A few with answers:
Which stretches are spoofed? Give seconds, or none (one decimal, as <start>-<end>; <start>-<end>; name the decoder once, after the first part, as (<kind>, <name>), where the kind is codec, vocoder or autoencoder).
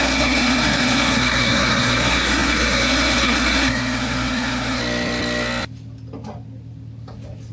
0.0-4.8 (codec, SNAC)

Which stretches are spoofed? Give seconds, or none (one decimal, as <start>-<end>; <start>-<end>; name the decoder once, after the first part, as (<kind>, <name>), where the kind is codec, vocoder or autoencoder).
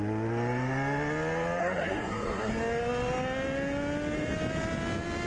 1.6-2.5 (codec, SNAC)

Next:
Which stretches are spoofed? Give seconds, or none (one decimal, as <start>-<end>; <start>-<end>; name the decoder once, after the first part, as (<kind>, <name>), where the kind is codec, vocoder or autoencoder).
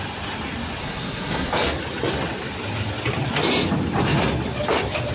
0.8-1.5 (codec, SNAC)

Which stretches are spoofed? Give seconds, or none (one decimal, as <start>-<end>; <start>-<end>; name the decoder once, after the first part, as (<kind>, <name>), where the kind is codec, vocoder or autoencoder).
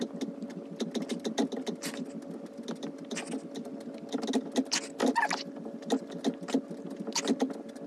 none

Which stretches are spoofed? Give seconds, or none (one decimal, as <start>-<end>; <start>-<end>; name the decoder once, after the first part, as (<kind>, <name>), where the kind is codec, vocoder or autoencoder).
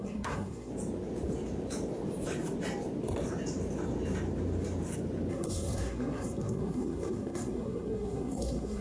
0.0-0.7 (codec, SNAC); 5.3-8.8